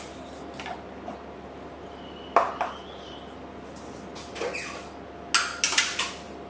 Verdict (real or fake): real